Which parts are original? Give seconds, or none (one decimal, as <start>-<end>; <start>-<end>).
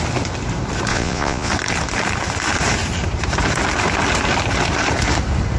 0.0-0.9; 1.5-5.6